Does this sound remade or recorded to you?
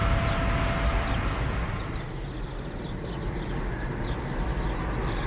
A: recorded